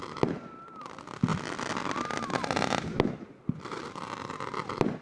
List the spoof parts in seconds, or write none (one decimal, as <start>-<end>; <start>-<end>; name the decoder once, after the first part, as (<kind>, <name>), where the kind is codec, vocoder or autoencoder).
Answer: none